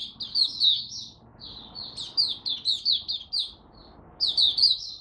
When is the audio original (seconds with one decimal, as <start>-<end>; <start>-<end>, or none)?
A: 0.0-5.0